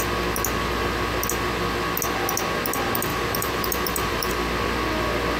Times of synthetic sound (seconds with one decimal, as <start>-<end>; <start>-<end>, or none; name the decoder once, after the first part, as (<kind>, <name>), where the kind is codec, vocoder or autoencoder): 3.1-4.3 (vocoder, BigVGAN v2)